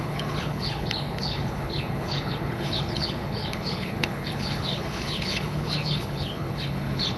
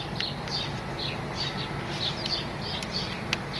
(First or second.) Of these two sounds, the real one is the second